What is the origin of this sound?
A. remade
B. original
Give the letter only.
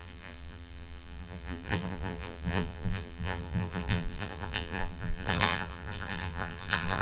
A